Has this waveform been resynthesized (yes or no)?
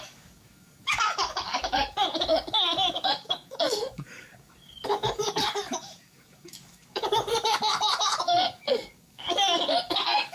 yes